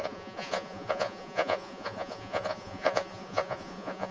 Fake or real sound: fake